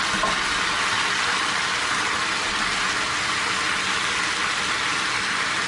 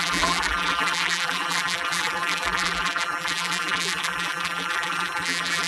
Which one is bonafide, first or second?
first